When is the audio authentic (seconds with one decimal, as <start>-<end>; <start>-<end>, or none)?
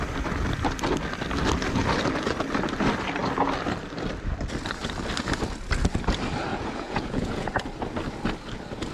0.0-6.5; 7.5-8.9